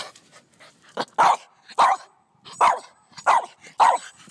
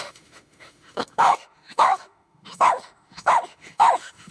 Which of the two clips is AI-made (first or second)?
second